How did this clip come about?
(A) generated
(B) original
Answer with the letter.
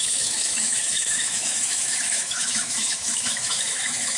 A